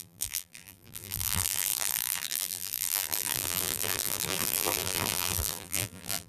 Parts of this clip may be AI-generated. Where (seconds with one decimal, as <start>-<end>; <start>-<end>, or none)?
0.0-6.3